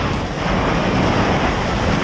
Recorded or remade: recorded